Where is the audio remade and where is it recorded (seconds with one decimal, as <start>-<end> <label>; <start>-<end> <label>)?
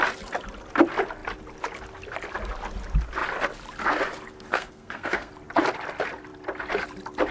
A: 0.0-4.5 recorded; 4.5-5.3 remade; 5.3-7.3 recorded